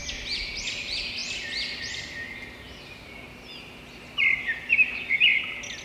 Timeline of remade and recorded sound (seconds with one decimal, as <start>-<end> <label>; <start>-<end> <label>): 0.0-5.8 recorded